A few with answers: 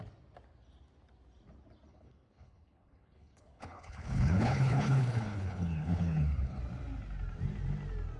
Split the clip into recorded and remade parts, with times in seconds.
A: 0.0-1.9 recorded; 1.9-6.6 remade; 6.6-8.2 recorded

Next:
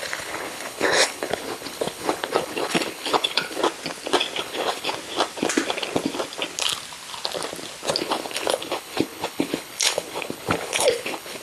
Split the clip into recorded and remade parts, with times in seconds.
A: 0.0-3.6 remade; 3.6-4.4 recorded; 4.4-4.9 remade; 4.9-8.0 recorded; 8.0-11.4 remade

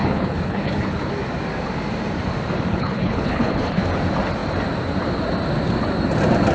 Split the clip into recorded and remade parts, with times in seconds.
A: 0.0-1.1 remade; 1.1-2.7 recorded; 2.7-3.8 remade; 3.8-6.5 recorded